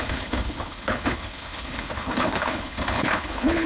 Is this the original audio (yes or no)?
no